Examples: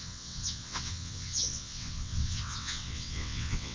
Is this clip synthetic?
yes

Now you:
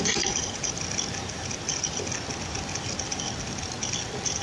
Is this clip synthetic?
no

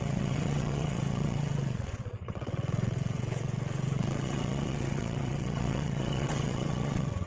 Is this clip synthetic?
yes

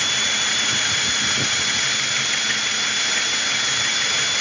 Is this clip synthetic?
no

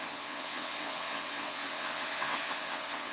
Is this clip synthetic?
yes